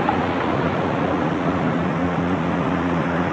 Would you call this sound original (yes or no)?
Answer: no